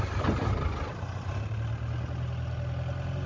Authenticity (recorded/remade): recorded